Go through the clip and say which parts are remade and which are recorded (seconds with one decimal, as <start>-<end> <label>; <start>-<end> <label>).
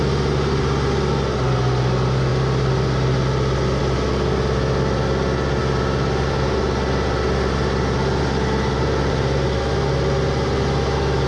0.0-11.3 recorded